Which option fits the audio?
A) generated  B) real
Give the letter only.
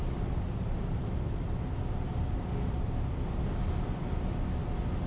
B